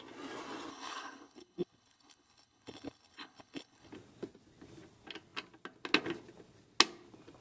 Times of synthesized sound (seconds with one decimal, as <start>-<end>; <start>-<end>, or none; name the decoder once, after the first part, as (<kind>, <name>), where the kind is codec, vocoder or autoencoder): 0.7-3.9 (codec, HILCodec)